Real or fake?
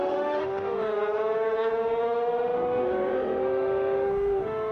fake